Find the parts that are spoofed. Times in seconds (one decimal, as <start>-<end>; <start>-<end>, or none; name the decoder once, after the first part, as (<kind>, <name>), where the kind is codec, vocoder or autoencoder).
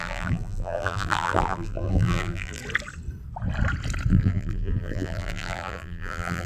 0.0-2.6 (vocoder, BigVGAN v2); 4.1-6.5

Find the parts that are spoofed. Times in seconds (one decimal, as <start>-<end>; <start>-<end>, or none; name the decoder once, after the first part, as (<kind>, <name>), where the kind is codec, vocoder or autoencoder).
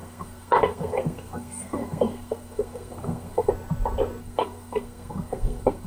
0.0-3.5 (codec, SNAC); 4.2-5.9